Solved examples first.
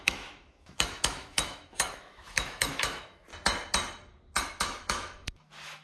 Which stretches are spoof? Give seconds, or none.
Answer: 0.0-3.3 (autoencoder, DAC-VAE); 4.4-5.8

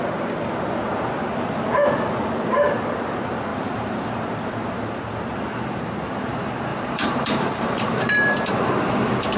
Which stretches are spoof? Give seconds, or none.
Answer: 3.5-4.2 (vocoder, BigVGAN v2); 6.7-8.7

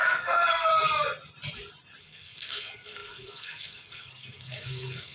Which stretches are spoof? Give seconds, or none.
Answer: 0.0-0.7 (codec, SNAC); 2.0-5.1

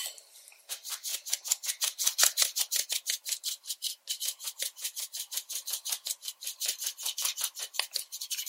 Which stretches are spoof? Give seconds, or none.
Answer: none

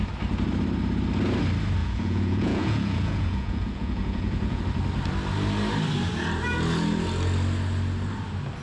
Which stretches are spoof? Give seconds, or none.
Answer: 1.8-4.6 (vocoder, Vocos)

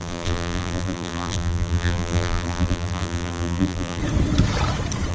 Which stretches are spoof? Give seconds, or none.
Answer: 0.0-4.0 (vocoder, BigVGAN v2)